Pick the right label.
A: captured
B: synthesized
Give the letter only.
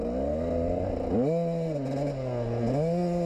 A